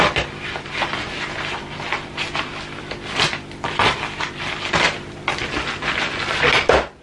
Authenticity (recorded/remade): recorded